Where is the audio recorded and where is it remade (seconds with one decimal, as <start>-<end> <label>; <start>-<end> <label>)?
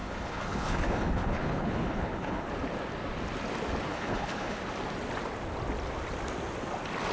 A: 0.0-2.5 remade; 2.5-3.9 recorded; 3.9-4.6 remade; 4.6-7.1 recorded